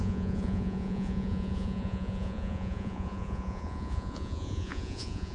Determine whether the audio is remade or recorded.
remade